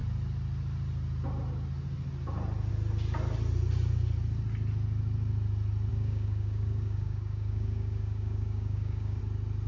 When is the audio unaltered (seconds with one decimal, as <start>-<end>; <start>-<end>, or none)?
0.0-5.9; 9.2-9.7